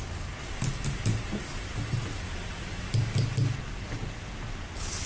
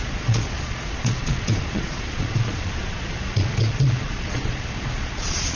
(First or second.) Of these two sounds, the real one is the first